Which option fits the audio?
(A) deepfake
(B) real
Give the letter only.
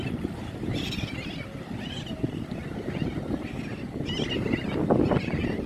B